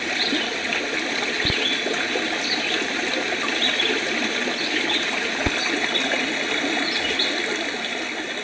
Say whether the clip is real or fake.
fake